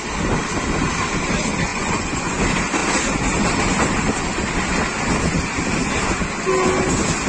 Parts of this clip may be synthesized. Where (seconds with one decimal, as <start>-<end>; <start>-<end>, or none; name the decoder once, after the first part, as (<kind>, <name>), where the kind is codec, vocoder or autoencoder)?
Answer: 1.7-2.4 (vocoder, Vocos)